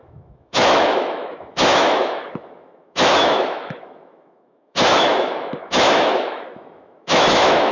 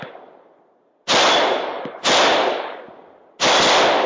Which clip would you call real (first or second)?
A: second